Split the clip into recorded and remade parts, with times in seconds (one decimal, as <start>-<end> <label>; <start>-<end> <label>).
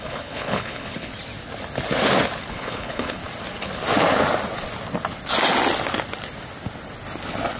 0.0-1.1 remade; 1.1-2.5 recorded; 2.5-3.2 remade; 3.2-7.6 recorded